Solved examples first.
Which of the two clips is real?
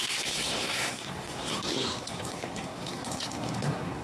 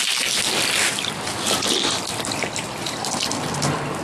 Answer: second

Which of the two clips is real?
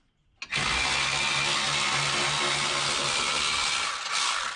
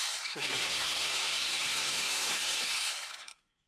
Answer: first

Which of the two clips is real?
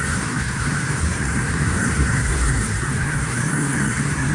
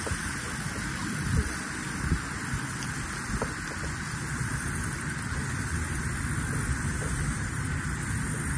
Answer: second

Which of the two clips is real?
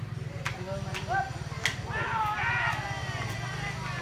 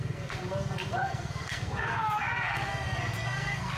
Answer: first